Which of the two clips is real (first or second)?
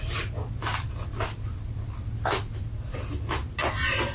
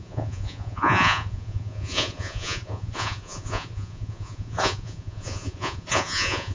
first